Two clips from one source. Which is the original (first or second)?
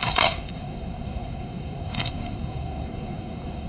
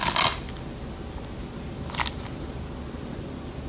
second